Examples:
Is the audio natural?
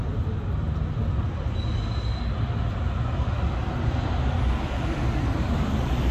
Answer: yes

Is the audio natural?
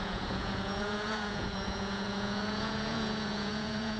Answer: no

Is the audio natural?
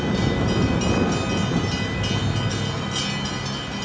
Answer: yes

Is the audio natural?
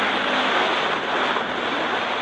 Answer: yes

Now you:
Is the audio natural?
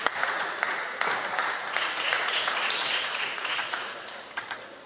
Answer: no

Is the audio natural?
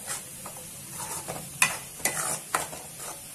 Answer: yes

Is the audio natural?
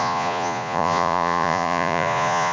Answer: no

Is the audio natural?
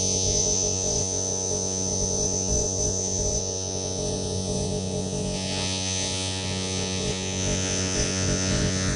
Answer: no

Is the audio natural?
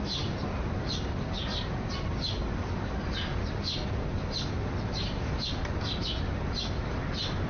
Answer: yes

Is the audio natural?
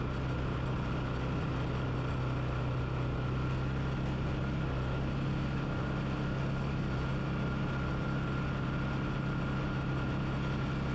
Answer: yes